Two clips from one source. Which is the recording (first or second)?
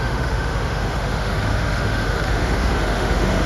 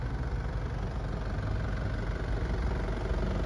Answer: second